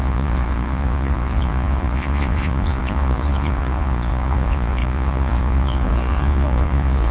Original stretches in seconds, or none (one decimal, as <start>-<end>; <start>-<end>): none